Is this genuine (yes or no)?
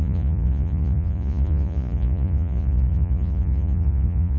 no